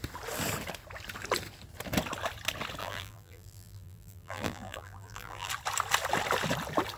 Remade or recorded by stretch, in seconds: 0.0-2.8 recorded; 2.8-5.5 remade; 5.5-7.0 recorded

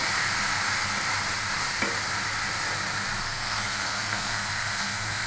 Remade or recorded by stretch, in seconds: 0.0-3.2 recorded; 3.2-5.3 remade

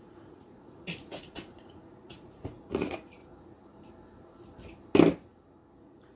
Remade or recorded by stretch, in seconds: 0.0-3.2 remade; 3.2-5.8 recorded; 5.8-6.2 remade

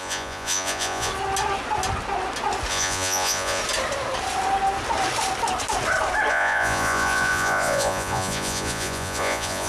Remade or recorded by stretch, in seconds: 0.0-1.1 remade; 1.1-2.7 recorded; 2.7-3.6 remade; 3.6-6.3 recorded; 6.3-9.7 remade

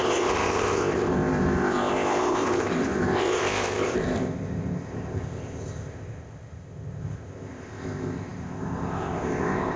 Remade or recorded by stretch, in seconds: 0.0-9.8 remade

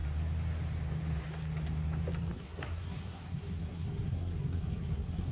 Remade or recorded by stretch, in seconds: 0.0-2.4 recorded; 2.4-5.3 remade